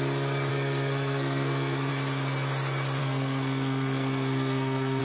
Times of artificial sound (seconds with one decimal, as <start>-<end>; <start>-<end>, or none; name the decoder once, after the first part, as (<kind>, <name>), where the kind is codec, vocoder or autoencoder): 0.5-1.9 (codec, SNAC); 3.0-5.0